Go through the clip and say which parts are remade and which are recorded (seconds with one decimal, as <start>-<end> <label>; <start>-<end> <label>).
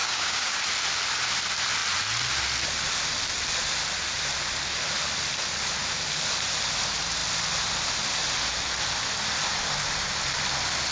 0.0-0.6 remade; 0.6-10.9 recorded